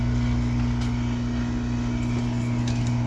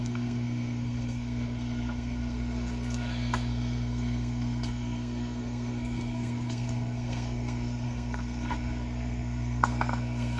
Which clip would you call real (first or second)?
first